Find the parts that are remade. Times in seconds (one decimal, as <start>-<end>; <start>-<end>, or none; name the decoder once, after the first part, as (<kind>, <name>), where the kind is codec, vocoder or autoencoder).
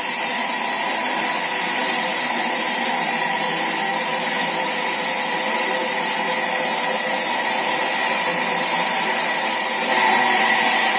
2.1-3.6 (vocoder, BigVGAN v2)